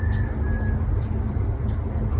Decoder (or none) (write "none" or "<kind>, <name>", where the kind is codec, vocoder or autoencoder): vocoder, BigVGAN v2